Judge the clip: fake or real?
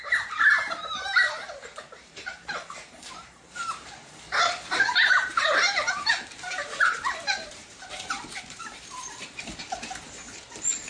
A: fake